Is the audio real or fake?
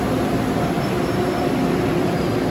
fake